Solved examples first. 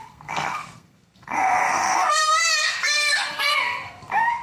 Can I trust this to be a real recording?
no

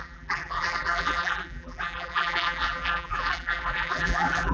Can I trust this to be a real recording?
no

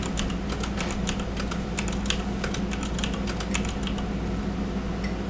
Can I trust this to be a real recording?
yes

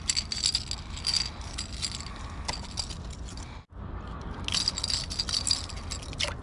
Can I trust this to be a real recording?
yes